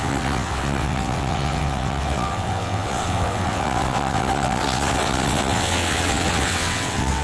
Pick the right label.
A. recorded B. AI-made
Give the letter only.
B